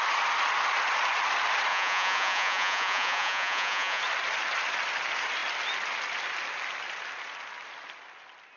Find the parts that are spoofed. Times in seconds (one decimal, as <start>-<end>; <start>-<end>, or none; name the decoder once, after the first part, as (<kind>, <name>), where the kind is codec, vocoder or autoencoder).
1.7-4.0 (vocoder, Vocos)